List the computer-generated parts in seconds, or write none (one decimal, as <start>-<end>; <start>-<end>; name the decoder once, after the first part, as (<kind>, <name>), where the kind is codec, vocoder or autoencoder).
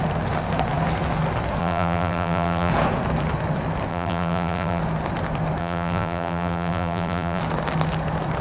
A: 1.6-2.7 (vocoder, BigVGAN v2); 3.9-4.8; 5.6-7.4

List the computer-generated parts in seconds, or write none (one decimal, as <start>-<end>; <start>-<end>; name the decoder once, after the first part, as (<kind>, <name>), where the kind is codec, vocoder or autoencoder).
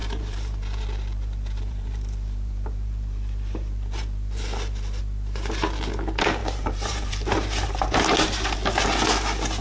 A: 0.0-5.0 (vocoder, BigVGAN v2); 6.4-8.0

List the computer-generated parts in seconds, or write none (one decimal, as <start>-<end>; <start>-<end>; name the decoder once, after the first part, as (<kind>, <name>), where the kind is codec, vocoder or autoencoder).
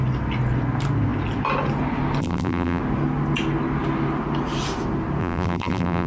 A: 2.2-2.8 (vocoder, BigVGAN v2); 5.2-6.1